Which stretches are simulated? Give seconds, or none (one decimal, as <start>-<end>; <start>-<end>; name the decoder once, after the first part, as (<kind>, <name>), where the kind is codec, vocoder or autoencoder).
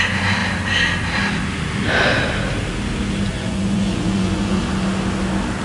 3.3-4.6 (vocoder, Vocos)